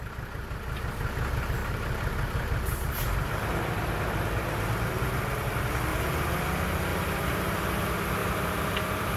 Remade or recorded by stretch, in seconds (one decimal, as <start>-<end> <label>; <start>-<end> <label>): 0.0-1.6 recorded; 1.6-5.2 remade; 5.2-5.9 recorded; 5.9-6.4 remade; 6.4-6.9 recorded; 6.9-7.7 remade; 7.7-8.2 recorded; 8.2-9.2 remade